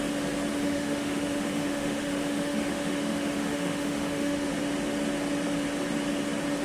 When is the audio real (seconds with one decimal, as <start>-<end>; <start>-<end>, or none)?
0.0-0.5; 4.5-6.6